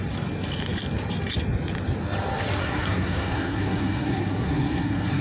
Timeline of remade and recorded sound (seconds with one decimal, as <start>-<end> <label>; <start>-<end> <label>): 0.0-2.6 recorded; 2.6-5.2 remade